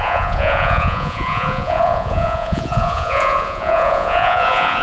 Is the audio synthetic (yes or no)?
yes